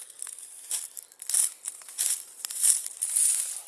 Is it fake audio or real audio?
real